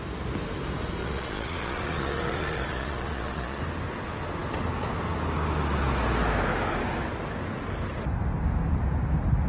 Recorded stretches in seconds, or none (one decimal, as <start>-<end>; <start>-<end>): 0.0-1.0; 3.6-9.5